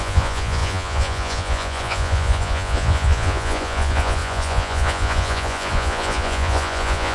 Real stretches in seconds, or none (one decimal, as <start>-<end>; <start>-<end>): none